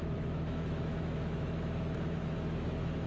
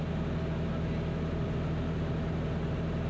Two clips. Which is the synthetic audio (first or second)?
first